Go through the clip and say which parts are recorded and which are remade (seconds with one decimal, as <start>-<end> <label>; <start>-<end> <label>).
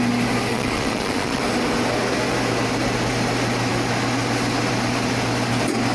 0.0-0.5 recorded; 0.5-1.4 remade; 1.4-5.9 recorded